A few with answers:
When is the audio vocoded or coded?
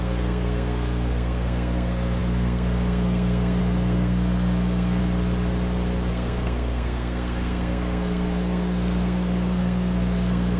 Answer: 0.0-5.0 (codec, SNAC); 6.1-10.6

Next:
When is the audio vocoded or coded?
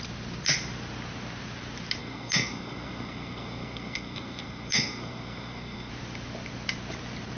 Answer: 2.0-5.9 (codec, SNAC)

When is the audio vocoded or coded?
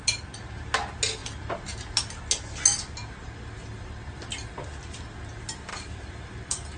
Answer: 5.7-6.8 (vocoder, BigVGAN v2)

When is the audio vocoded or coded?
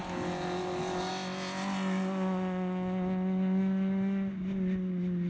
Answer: none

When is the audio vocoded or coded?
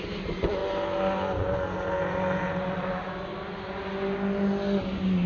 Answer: none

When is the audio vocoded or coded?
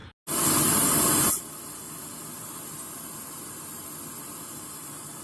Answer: none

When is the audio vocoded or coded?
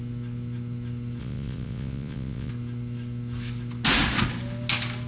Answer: 1.2-2.5 (vocoder, Vocos)